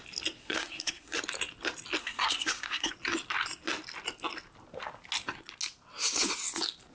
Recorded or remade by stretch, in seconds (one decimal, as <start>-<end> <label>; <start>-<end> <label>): 0.0-0.4 recorded; 0.4-1.2 remade; 1.2-2.0 recorded; 2.0-2.9 remade; 2.9-6.9 recorded

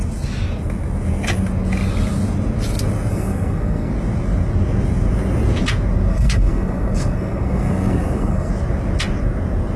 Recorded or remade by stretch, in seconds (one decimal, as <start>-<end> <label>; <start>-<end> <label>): 0.0-3.1 recorded; 3.1-3.9 remade; 3.9-6.1 recorded; 6.1-8.5 remade; 8.5-9.8 recorded